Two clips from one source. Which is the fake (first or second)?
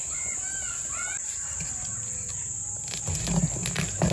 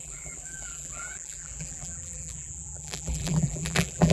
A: second